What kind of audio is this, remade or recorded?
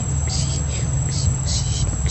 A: recorded